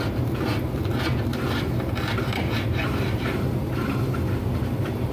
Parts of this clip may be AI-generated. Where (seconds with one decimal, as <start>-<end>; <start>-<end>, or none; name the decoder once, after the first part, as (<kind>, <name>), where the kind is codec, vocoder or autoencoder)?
1.3-4.4 (vocoder, BigVGAN v2)